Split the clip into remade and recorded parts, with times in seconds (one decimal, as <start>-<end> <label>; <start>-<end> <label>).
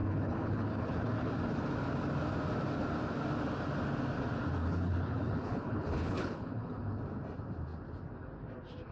0.0-1.3 remade; 1.3-4.6 recorded; 4.6-7.0 remade; 7.0-8.9 recorded